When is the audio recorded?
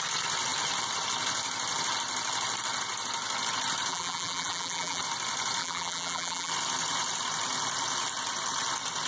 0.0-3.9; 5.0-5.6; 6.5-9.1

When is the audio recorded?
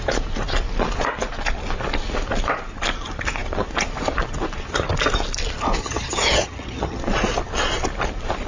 0.0-5.8; 7.0-8.5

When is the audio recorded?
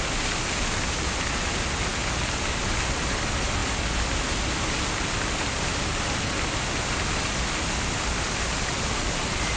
0.0-9.6